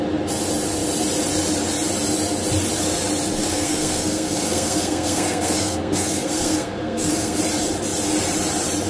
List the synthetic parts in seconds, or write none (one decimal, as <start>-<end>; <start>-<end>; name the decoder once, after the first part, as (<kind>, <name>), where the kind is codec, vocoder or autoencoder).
3.4-7.4 (codec, SNAC)